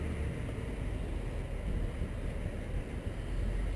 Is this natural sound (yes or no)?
yes